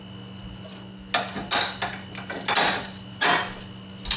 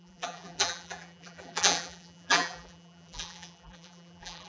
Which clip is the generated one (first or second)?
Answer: second